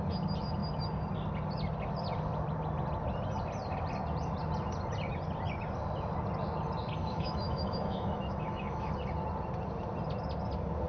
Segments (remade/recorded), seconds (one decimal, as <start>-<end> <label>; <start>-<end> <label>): 0.0-7.0 recorded; 7.0-8.9 remade; 8.9-10.9 recorded

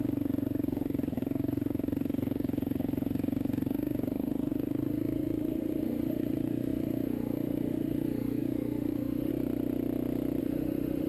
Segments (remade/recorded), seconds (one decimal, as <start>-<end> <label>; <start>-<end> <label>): 0.0-9.3 remade; 9.3-10.4 recorded; 10.4-11.1 remade

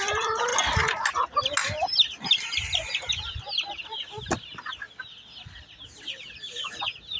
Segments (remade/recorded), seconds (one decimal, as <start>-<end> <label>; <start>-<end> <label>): 0.0-7.2 recorded

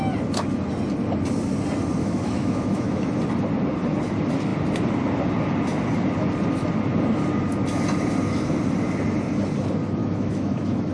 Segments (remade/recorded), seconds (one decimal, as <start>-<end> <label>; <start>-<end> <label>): 0.0-2.0 recorded; 2.0-3.1 remade; 3.1-10.0 recorded; 10.0-10.9 remade

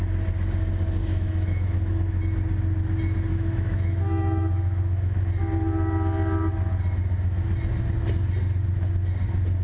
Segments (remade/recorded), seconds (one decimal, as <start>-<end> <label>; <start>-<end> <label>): 0.0-1.0 recorded; 1.0-2.2 remade; 2.2-3.3 recorded; 3.3-5.2 remade; 5.2-9.6 recorded

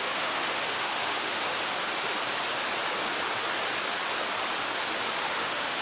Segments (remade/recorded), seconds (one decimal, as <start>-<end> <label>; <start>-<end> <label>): 0.0-1.7 remade; 1.7-5.2 recorded; 5.2-5.8 remade

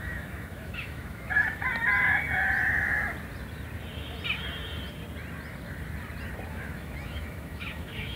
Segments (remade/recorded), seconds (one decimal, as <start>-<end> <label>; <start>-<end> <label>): 0.0-1.7 remade; 1.7-6.5 recorded; 6.5-8.2 remade

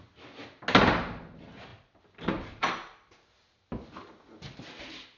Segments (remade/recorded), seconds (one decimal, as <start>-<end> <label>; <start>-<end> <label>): 0.0-5.2 recorded